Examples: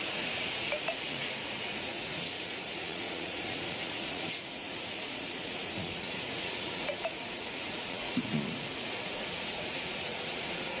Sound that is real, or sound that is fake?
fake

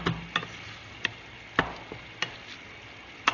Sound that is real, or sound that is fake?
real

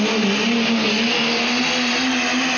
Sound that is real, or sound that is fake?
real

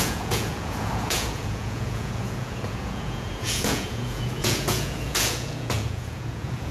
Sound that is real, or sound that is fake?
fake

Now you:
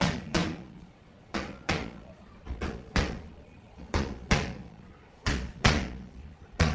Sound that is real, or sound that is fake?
fake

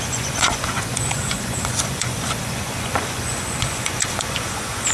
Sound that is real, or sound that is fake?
fake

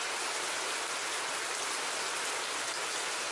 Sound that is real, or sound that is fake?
real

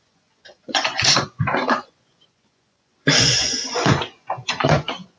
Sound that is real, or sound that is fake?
fake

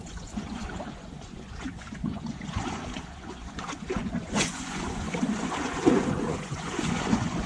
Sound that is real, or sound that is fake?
fake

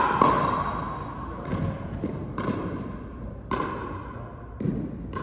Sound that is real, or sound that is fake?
real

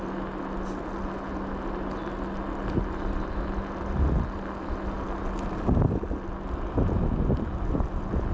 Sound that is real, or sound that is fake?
real